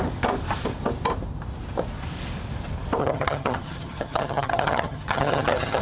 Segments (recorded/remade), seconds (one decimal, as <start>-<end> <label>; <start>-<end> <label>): 0.0-3.0 recorded; 3.0-5.8 remade